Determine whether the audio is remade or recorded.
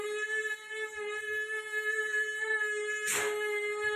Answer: recorded